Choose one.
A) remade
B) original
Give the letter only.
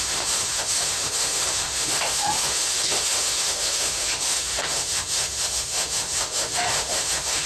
A